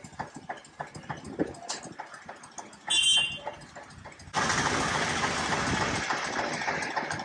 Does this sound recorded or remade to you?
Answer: recorded